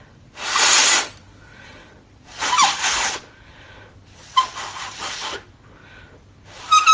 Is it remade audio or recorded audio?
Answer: recorded